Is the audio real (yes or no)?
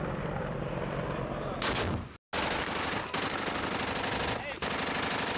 yes